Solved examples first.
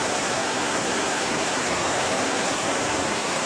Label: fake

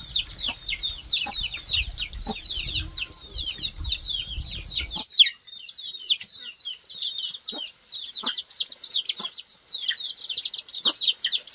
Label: real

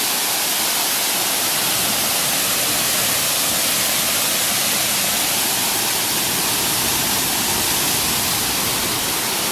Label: real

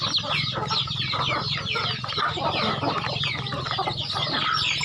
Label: real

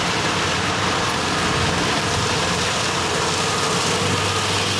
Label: real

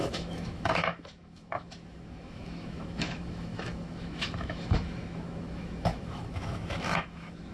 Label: fake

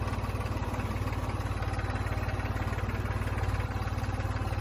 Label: real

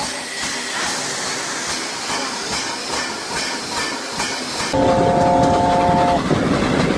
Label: real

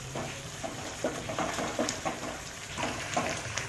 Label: fake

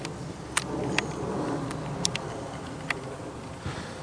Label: real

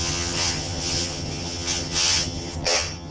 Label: fake